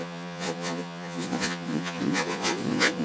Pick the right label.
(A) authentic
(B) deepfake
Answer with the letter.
B